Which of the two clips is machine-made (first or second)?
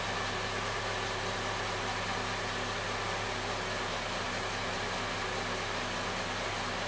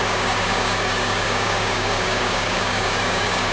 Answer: second